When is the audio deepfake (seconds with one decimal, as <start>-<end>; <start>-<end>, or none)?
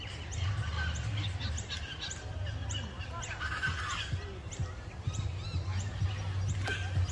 none